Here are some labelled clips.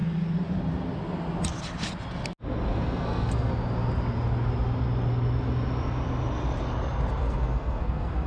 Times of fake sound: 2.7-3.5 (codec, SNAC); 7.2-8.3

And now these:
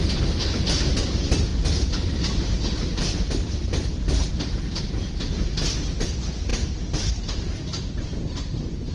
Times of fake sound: 6.5-7.1 (vocoder, BigVGAN v2)

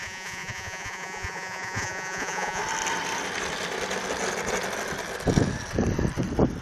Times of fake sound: 0.0-2.6 (vocoder, Vocos)

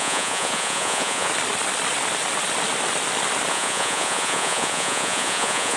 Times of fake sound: 0.0-1.3 (vocoder, Vocos); 3.5-5.8

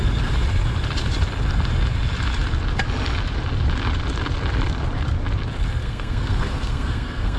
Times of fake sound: 5.8-7.4 (codec, SNAC)

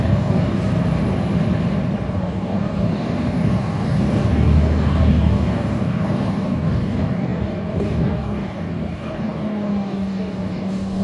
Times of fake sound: 0.0-0.6 (codec, DAC); 2.1-11.0

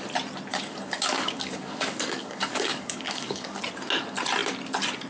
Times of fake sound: 0.5-3.6 (codec, DAC)